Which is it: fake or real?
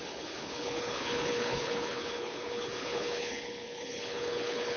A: fake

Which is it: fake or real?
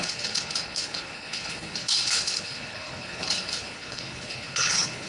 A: fake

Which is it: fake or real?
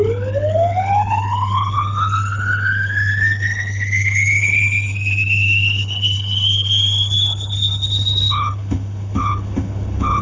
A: fake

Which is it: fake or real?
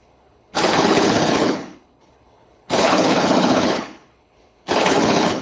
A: fake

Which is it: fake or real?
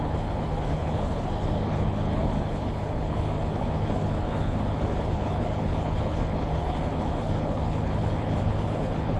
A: fake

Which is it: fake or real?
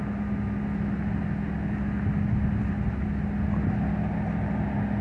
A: real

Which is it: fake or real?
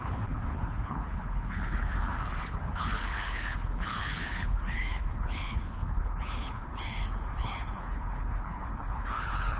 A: fake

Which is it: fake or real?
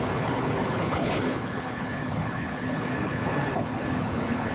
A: fake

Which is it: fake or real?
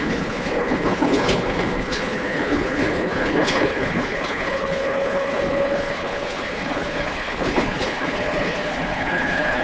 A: fake